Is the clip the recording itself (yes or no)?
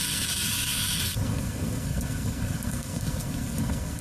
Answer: no